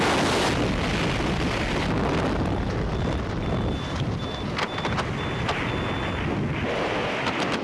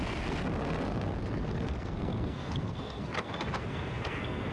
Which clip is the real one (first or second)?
first